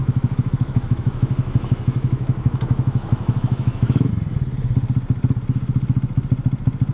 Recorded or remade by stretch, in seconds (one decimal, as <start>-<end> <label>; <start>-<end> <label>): 0.0-4.1 remade; 4.1-6.9 recorded